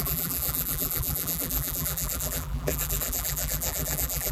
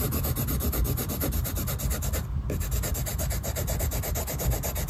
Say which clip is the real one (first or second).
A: second